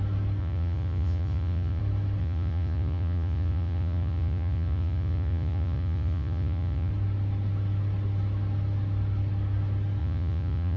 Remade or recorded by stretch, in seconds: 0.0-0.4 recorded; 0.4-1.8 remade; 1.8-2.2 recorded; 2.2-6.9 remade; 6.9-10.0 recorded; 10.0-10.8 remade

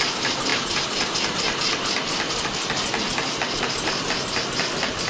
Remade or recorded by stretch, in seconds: 0.0-5.1 recorded

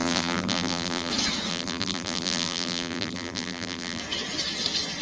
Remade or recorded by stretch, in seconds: 0.0-1.1 remade; 1.1-1.5 recorded; 1.5-4.0 remade; 4.0-5.0 recorded

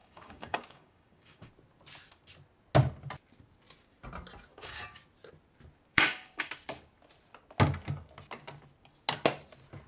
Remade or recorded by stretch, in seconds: 0.0-1.5 remade; 1.5-4.5 recorded; 4.5-5.0 remade; 5.0-5.9 recorded; 5.9-6.5 remade; 6.5-9.9 recorded

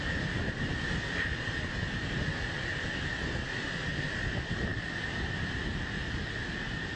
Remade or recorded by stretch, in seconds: 0.0-7.0 recorded

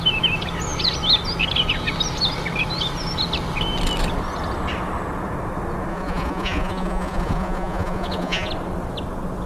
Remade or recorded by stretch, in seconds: 0.0-5.9 recorded; 5.9-8.5 remade; 8.5-9.5 recorded

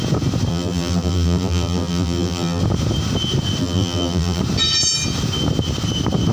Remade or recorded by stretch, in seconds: 0.0-0.5 recorded; 0.5-2.6 remade; 2.6-3.6 recorded; 3.6-4.4 remade; 4.4-6.3 recorded

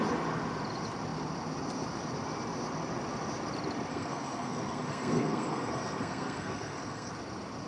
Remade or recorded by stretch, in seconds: 0.0-3.9 recorded; 3.9-7.1 remade; 7.1-7.7 recorded